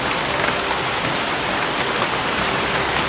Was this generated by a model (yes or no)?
no